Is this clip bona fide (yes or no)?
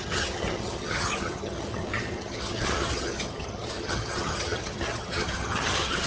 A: no